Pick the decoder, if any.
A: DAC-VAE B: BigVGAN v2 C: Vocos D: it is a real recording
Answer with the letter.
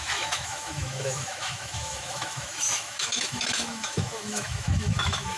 A